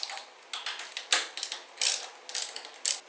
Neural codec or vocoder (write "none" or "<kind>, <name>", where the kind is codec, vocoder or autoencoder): none